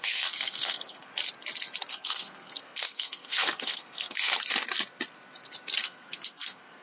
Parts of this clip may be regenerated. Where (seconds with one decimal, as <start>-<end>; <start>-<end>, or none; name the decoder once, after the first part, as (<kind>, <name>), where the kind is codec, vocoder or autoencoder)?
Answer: 0.0-1.1 (codec, SNAC); 1.9-4.3; 5.8-6.8